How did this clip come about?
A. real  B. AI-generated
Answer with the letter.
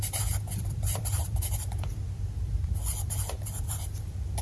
B